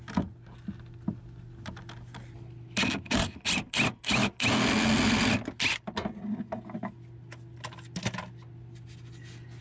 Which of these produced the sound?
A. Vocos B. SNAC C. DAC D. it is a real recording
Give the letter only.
D